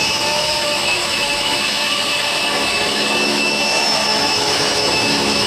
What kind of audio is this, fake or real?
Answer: fake